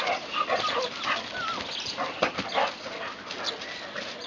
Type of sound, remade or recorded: recorded